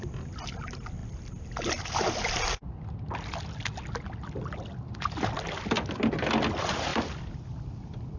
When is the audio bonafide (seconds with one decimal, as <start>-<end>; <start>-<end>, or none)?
0.0-6.9